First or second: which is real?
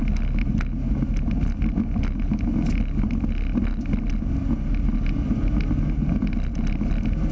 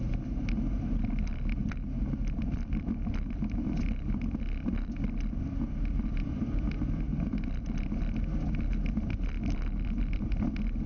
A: first